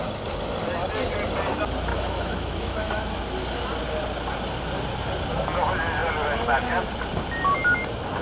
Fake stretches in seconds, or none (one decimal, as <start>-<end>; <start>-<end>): 1.9-3.2